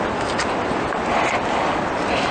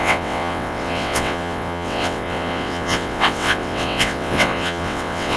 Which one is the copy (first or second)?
second